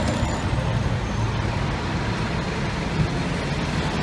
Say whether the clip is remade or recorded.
recorded